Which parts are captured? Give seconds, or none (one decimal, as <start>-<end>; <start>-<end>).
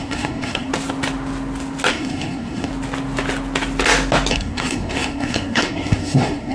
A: 0.7-1.9; 2.7-4.3